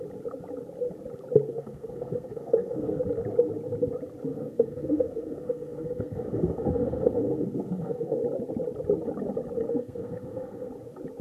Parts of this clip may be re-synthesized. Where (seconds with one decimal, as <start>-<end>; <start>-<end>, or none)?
1.5-3.0; 4.3-8.2; 9.7-10.7